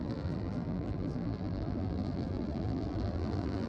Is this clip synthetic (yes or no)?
yes